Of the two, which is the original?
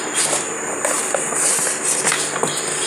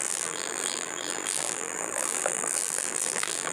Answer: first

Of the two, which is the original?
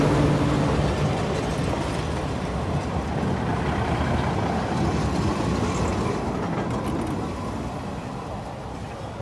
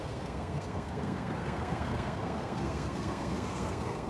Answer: first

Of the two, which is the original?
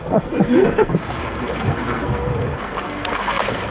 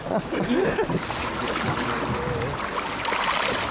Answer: second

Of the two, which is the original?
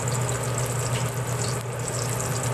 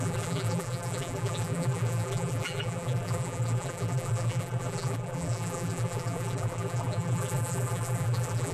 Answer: first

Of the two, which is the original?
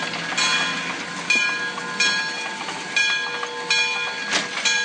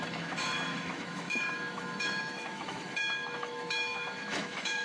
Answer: first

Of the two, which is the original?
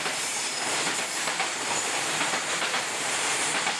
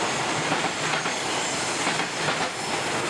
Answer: second